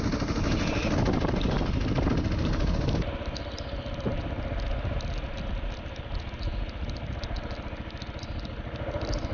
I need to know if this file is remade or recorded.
recorded